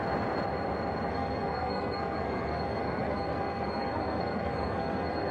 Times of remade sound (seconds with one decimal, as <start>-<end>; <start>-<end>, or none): 1.1-5.3